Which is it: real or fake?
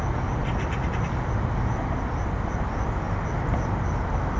real